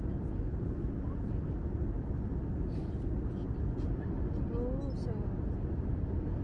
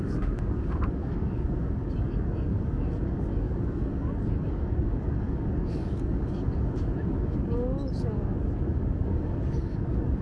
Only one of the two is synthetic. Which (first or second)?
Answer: second